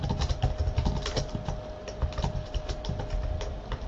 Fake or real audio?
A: real